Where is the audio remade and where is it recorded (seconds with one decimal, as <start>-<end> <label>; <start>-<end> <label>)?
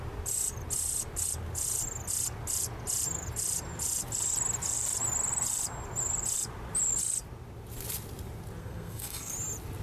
0.0-8.6 recorded; 8.6-9.3 remade; 9.3-9.8 recorded